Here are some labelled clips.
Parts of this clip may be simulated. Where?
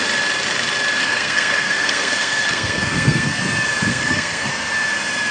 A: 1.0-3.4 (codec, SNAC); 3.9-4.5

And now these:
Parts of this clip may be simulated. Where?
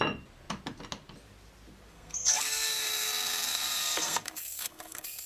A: 1.9-5.3 (codec, SNAC)